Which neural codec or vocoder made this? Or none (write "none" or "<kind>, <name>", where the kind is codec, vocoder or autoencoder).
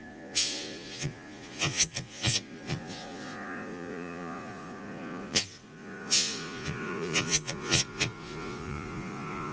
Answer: vocoder, Vocos